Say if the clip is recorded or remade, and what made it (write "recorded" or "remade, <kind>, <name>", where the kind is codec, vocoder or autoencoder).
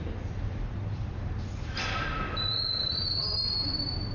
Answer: remade, vocoder, BigVGAN v2